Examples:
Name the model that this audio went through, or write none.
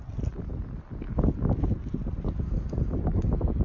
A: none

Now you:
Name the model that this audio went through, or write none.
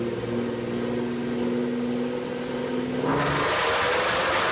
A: none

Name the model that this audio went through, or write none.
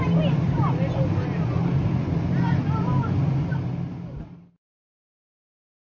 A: none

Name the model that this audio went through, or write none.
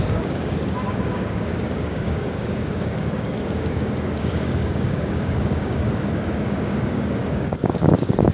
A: codec, DAC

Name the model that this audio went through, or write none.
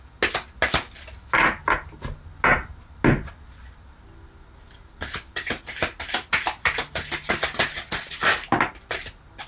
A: none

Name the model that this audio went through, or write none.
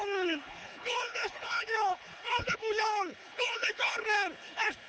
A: codec, HILCodec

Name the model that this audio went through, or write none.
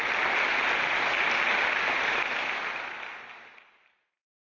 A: none